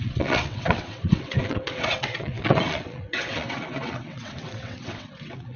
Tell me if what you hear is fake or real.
fake